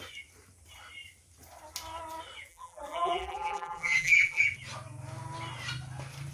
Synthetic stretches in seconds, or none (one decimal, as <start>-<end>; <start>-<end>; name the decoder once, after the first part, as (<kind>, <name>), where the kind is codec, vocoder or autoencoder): 2.5-4.4 (vocoder, BigVGAN v2)